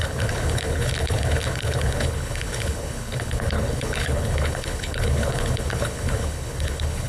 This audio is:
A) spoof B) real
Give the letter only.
A